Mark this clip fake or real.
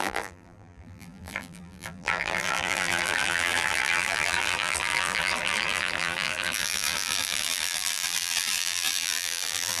fake